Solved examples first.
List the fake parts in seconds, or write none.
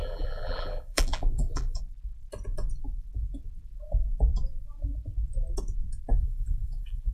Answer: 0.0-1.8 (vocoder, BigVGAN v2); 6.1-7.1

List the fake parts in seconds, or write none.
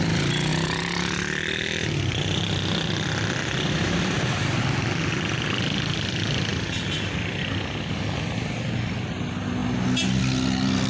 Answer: 0.5-4.6 (vocoder, BigVGAN v2)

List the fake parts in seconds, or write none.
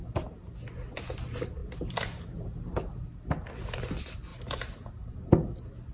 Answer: 1.6-3.0 (vocoder, BigVGAN v2); 4.3-5.3